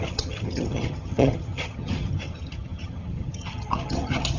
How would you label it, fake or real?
fake